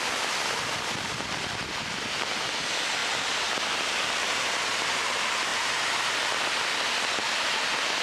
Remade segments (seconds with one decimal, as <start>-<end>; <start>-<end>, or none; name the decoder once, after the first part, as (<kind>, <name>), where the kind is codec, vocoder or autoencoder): none